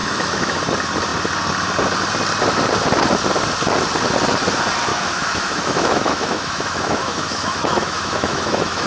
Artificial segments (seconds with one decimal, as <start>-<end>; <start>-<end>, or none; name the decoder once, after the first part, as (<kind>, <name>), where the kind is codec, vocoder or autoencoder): 0.0-0.6 (autoencoder, DAC-VAE); 4.9-8.9